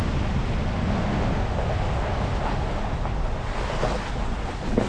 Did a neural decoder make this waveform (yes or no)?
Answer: no